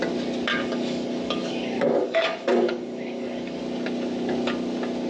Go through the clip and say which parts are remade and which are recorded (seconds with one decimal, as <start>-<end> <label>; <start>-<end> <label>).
0.0-0.5 recorded; 0.5-3.6 remade; 3.6-5.1 recorded